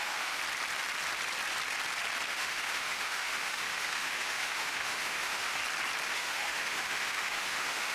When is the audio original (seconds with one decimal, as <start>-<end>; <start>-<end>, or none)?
0.4-2.3; 5.6-6.1